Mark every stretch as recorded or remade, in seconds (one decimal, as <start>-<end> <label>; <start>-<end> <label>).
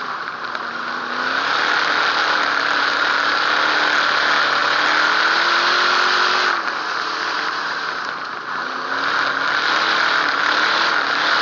0.0-11.4 recorded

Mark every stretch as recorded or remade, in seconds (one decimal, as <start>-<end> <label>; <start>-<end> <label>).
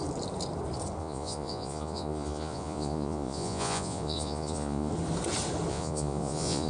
0.0-1.0 recorded; 1.0-4.9 remade; 4.9-5.7 recorded; 5.7-6.7 remade